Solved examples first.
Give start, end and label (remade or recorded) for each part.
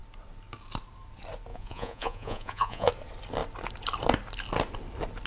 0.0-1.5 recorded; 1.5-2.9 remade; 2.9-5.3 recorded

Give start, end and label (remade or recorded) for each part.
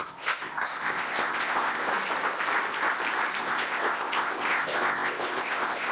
0.0-1.9 remade; 1.9-3.4 recorded; 3.4-5.9 remade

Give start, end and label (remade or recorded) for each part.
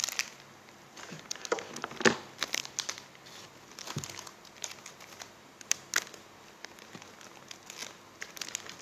0.0-8.8 recorded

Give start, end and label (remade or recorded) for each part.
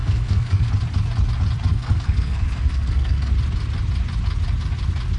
0.0-0.7 remade; 0.7-1.7 recorded; 1.7-3.3 remade; 3.3-5.2 recorded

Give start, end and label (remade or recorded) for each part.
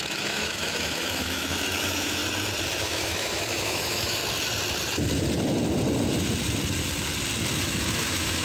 0.0-2.2 remade; 2.2-2.8 recorded; 2.8-4.2 remade; 4.2-7.5 recorded; 7.5-8.4 remade